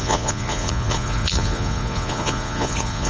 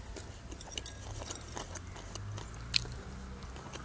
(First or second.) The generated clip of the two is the first